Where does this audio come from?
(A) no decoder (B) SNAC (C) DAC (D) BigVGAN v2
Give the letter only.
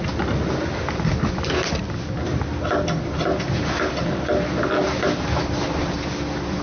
A